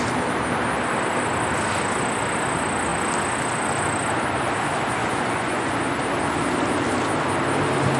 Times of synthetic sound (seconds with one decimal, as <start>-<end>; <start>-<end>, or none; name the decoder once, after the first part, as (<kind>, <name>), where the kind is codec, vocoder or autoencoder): 5.0-5.8 (vocoder, Vocos)